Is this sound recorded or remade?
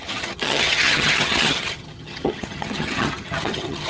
remade